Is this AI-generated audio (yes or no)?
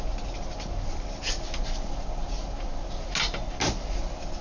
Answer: no